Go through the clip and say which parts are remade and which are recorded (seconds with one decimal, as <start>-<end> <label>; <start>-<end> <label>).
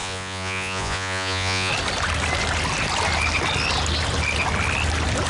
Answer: 0.0-1.7 remade; 1.7-5.3 recorded